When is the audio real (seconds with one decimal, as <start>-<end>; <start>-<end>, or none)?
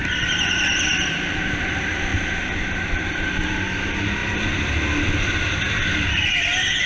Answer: 0.0-6.9